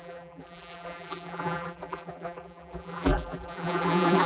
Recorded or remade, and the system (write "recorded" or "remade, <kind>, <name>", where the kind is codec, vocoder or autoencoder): remade, vocoder, BigVGAN v2